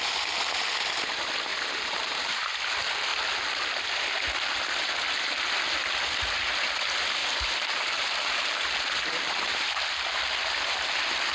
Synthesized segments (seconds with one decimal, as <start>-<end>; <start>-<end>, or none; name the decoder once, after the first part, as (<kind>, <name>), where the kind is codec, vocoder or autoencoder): 1.5-2.5 (vocoder, BigVGAN v2); 7.2-10.2